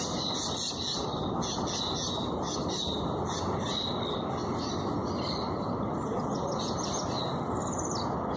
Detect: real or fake real